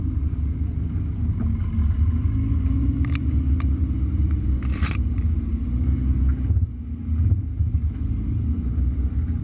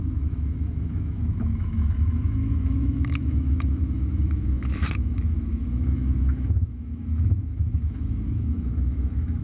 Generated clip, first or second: second